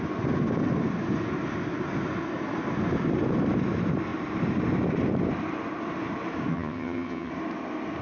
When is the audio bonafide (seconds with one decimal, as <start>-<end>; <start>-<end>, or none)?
0.0-6.5; 7.3-8.0